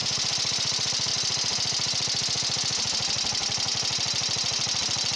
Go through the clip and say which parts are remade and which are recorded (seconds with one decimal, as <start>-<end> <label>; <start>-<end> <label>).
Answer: 0.0-1.1 remade; 1.1-5.2 recorded